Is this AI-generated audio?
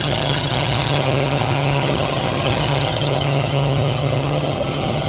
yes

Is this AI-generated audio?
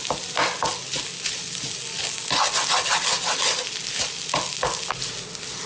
no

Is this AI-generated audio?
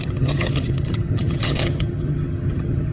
yes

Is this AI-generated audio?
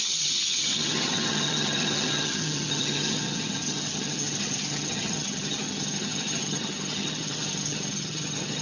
yes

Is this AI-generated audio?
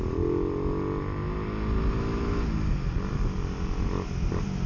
no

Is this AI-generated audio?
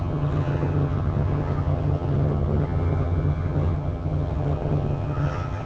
yes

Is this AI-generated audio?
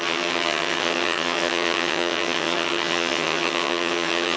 yes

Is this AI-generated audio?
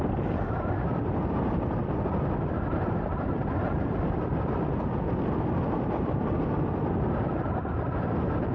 no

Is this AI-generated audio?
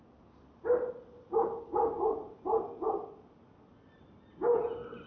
no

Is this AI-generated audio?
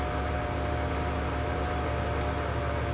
no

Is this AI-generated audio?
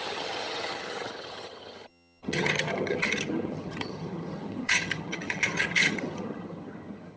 yes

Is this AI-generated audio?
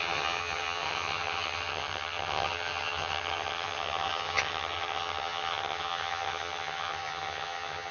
yes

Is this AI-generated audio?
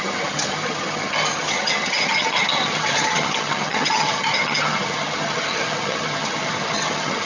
yes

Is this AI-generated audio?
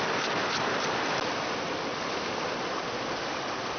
no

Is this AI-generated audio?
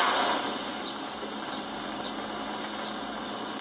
no